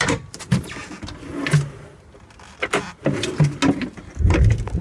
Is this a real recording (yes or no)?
yes